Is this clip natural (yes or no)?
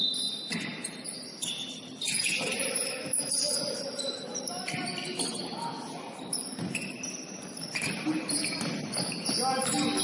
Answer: yes